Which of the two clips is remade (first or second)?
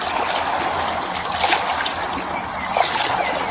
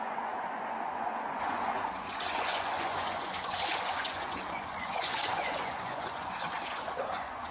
second